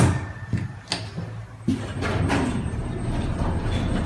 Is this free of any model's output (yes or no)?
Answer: yes